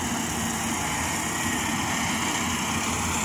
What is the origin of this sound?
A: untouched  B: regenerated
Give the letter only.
A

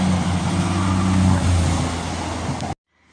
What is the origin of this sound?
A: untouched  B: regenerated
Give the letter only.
A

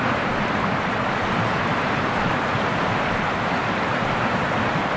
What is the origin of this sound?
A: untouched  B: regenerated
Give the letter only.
B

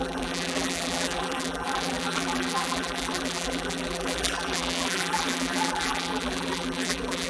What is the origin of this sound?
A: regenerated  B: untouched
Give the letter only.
A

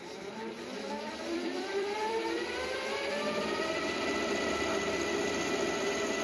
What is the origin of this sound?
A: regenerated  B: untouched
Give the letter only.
A